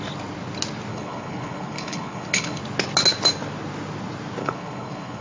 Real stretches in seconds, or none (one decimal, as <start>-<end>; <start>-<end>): 0.0-0.9; 2.6-4.4